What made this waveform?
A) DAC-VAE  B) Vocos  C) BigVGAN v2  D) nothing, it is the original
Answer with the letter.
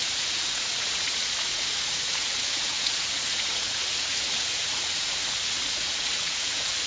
B